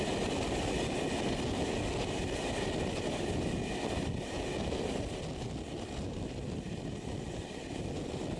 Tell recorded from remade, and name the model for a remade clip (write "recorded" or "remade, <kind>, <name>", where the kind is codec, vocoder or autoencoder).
recorded